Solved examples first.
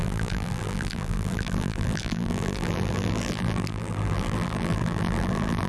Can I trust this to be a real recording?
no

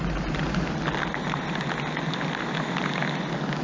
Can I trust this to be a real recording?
yes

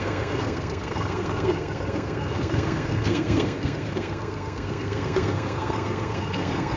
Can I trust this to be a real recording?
no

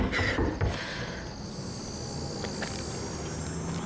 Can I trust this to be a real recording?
yes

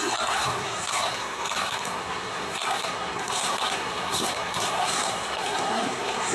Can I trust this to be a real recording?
no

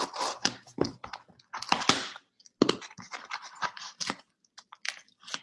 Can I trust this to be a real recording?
yes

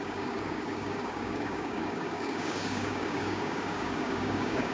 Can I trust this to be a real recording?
no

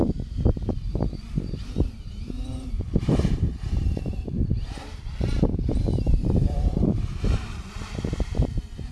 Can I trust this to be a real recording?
no